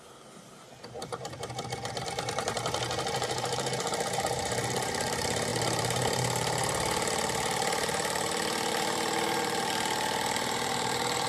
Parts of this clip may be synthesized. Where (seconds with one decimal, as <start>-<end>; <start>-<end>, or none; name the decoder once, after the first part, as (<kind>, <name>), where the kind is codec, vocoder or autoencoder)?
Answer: 0.0-11.3 (vocoder, BigVGAN v2)